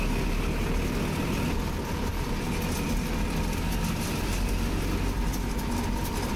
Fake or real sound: real